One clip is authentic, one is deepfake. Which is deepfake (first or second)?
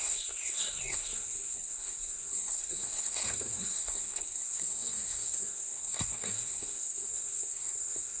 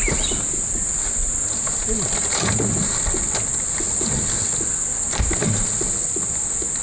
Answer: first